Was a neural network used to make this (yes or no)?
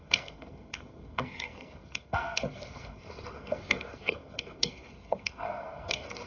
yes